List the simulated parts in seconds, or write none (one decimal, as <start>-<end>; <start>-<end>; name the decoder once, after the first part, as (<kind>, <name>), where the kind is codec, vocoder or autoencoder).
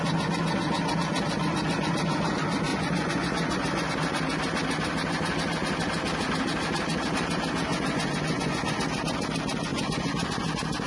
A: 2.7-3.9 (vocoder, Vocos); 7.7-8.8; 9.7-10.3